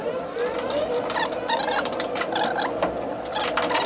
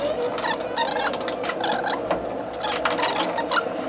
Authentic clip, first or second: second